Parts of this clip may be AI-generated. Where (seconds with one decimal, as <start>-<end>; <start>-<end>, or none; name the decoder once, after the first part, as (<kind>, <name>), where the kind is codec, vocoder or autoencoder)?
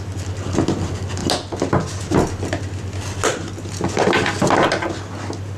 none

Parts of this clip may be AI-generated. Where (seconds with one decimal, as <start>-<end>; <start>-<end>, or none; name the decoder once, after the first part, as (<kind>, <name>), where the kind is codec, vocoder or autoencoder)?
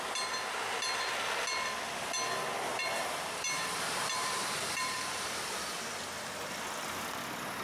2.7-5.8 (vocoder, BigVGAN v2)